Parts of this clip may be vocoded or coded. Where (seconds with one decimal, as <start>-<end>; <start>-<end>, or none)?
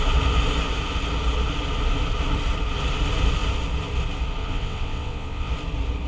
4.4-5.5